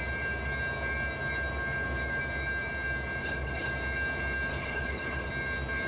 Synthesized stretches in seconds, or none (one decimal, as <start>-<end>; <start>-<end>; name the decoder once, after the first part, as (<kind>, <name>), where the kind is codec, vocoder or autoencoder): 3.2-3.7 (codec, HILCodec); 4.5-5.3